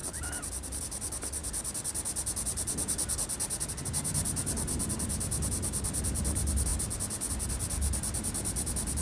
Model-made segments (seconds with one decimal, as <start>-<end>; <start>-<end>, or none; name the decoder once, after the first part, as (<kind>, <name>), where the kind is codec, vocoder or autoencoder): 0.0-0.8 (vocoder, BigVGAN v2)